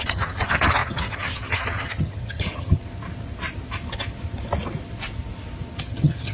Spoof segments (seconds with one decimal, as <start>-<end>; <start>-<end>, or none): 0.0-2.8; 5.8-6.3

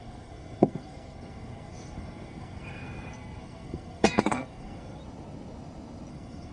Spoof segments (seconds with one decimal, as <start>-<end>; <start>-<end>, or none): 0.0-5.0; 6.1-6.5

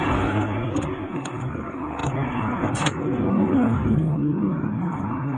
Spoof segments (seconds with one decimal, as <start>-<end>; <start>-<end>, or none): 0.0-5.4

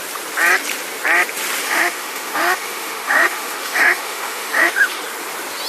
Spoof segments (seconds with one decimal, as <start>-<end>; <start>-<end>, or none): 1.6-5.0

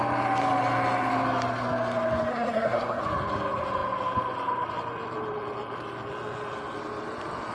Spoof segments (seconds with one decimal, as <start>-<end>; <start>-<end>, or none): 2.3-3.0

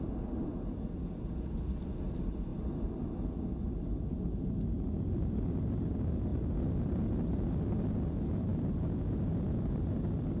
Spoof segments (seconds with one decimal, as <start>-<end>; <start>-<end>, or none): none

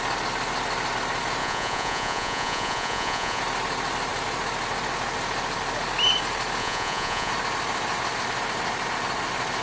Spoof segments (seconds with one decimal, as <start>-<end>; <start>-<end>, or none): 1.4-3.4; 6.6-7.3